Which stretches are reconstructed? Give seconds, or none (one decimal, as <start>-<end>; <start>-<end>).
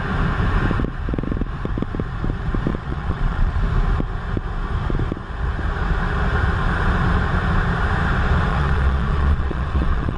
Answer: 2.7-3.6; 8.5-10.2